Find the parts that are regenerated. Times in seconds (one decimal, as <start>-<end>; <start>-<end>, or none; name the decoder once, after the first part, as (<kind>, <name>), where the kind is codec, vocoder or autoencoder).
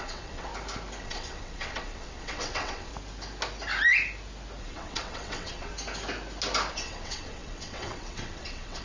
0.0-0.5 (vocoder, WaveNeXt); 1.0-2.9; 4.6-5.7; 6.7-8.8